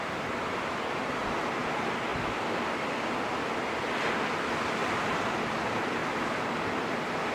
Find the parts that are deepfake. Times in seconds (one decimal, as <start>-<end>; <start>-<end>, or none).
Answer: 4.8-5.4